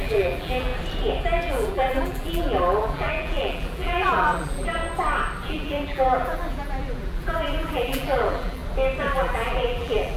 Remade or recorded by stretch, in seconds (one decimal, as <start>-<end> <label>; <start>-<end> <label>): 0.0-0.7 remade; 0.7-1.2 recorded; 1.2-4.8 remade; 4.8-5.4 recorded; 5.4-8.6 remade; 8.6-9.1 recorded; 9.1-10.2 remade